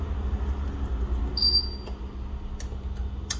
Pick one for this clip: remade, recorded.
recorded